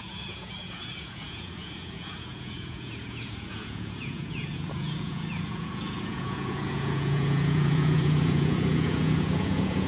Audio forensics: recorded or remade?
remade